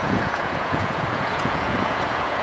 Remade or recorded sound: remade